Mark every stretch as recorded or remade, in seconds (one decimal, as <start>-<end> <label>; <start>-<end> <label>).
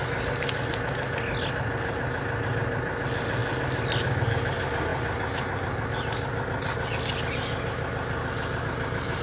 0.0-9.2 recorded